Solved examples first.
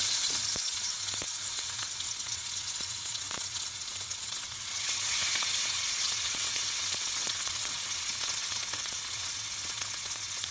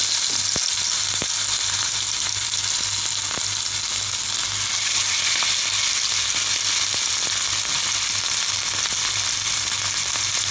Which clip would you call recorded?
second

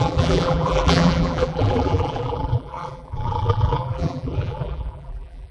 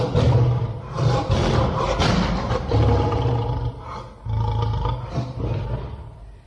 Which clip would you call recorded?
second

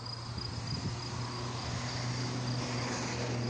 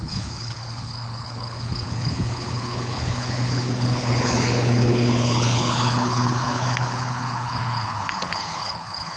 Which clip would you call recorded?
first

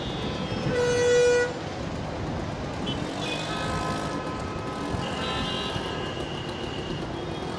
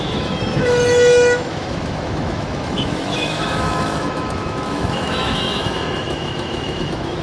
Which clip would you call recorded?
first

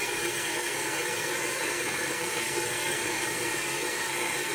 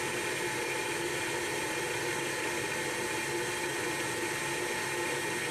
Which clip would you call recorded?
second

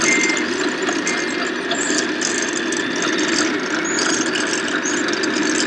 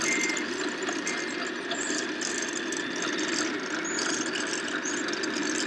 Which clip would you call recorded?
first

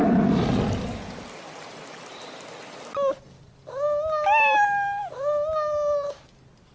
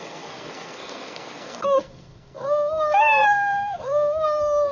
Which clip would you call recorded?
first